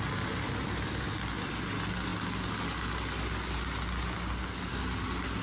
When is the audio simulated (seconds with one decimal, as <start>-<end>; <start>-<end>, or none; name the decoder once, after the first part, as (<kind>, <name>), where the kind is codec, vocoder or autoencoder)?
none